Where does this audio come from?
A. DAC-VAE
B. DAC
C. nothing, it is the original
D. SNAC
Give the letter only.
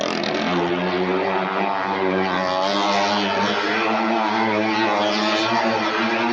C